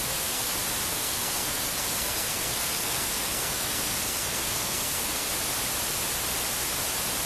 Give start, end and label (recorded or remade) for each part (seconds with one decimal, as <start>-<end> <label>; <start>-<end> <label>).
0.0-0.5 remade; 0.5-0.9 recorded; 0.9-5.3 remade; 5.3-7.3 recorded